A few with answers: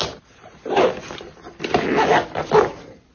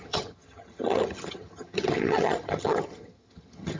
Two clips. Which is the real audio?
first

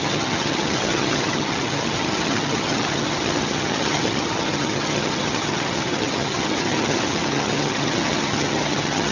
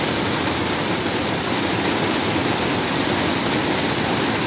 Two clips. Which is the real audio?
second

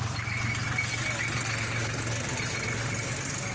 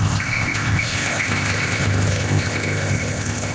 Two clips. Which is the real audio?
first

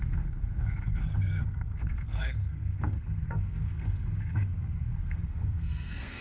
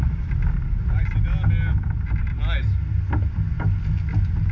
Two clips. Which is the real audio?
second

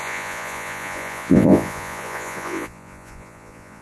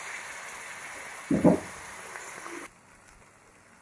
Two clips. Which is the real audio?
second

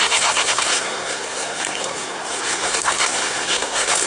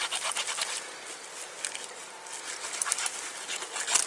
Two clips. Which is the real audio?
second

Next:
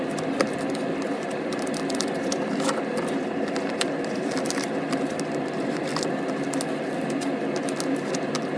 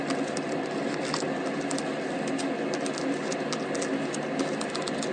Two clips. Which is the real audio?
second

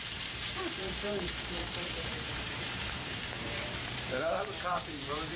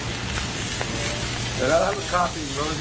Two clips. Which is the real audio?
second